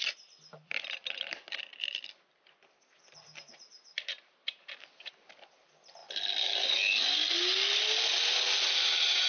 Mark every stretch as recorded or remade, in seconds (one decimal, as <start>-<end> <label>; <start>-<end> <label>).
0.0-6.0 remade; 6.0-9.3 recorded